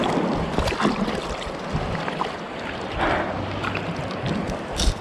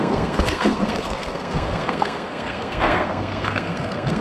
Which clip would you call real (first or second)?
first